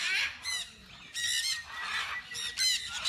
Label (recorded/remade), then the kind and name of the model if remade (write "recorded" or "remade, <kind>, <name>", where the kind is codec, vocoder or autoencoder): recorded